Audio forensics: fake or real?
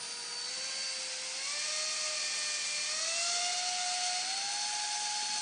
real